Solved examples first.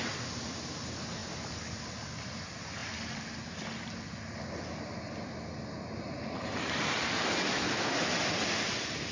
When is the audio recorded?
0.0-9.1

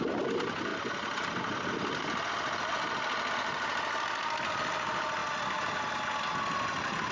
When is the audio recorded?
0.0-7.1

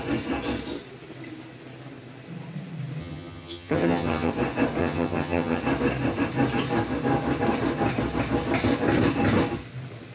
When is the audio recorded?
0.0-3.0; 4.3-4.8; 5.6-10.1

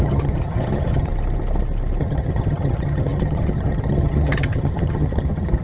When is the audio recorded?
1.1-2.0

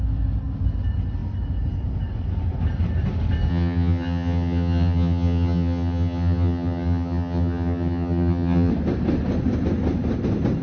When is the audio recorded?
0.0-3.5; 8.7-10.6